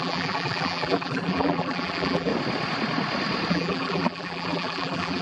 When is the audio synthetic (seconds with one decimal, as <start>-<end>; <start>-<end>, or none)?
0.0-2.3; 3.5-5.2